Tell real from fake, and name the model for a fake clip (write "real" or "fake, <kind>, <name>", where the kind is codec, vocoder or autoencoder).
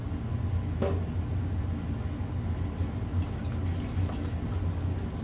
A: real